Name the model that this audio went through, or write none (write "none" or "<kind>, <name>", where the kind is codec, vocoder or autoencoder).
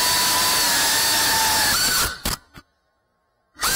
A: none